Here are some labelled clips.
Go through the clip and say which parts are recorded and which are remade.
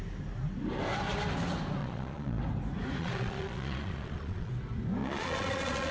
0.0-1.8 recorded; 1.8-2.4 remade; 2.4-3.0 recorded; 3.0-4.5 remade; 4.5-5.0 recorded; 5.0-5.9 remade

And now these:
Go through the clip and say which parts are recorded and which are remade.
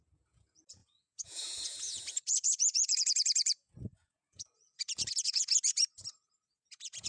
0.0-5.5 remade; 5.5-6.3 recorded; 6.3-7.1 remade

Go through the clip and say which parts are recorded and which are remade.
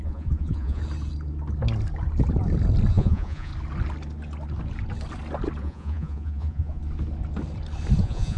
0.0-0.8 remade; 0.8-2.9 recorded; 2.9-3.5 remade; 3.5-5.6 recorded; 5.6-6.8 remade; 6.8-8.0 recorded; 8.0-8.4 remade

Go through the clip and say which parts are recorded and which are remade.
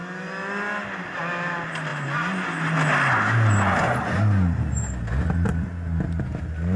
0.0-6.8 recorded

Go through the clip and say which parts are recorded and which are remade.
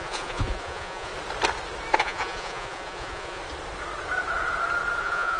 0.0-1.1 remade; 1.1-2.0 recorded; 2.0-3.4 remade; 3.4-5.0 recorded; 5.0-5.4 remade